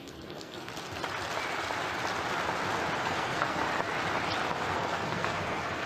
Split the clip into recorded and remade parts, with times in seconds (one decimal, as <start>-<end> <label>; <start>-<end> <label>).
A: 0.0-0.7 remade; 0.7-3.0 recorded; 3.0-3.6 remade; 3.6-4.7 recorded; 4.7-5.9 remade